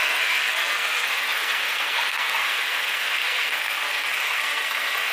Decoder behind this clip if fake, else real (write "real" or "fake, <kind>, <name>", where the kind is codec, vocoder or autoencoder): fake, codec, SNAC